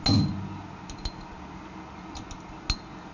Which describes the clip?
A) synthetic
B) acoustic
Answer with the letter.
B